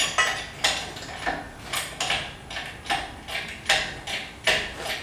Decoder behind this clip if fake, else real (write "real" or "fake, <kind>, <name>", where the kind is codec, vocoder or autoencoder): real